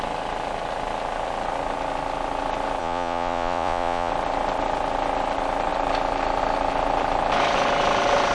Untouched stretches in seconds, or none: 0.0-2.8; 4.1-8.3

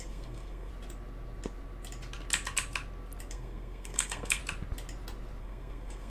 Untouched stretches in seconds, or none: 0.7-3.3; 4.4-5.4

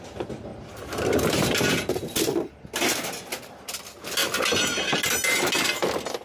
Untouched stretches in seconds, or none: 0.0-0.5; 2.5-6.2

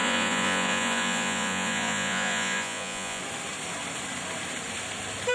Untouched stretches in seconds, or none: 3.2-5.3